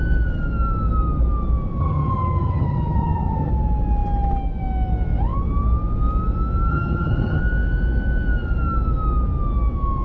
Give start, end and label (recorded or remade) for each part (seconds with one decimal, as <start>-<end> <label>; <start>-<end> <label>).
0.0-1.8 recorded; 1.8-3.5 remade; 3.5-6.7 recorded; 6.7-7.4 remade; 7.4-10.0 recorded